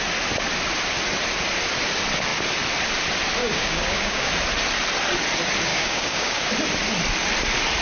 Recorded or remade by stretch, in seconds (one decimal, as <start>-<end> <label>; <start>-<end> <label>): 0.0-3.4 recorded; 3.4-4.3 remade; 4.3-5.7 recorded; 5.7-6.5 remade; 6.5-7.8 recorded